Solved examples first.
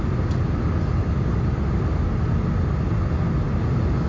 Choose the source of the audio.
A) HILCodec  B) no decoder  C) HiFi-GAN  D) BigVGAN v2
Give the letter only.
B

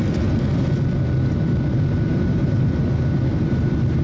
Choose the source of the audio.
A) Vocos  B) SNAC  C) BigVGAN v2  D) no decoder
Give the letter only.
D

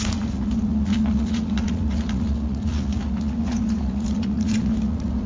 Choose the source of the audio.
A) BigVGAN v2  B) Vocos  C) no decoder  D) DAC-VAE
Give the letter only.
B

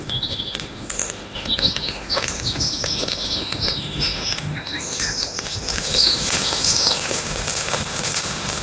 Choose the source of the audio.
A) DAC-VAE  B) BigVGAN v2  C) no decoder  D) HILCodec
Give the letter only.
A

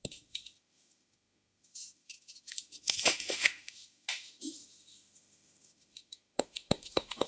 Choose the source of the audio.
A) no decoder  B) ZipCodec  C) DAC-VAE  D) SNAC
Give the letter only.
C